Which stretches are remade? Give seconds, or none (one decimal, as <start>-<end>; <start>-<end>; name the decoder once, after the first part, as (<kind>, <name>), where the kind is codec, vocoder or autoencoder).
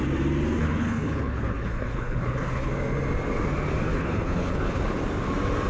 0.6-2.7 (codec, HILCodec); 3.9-4.8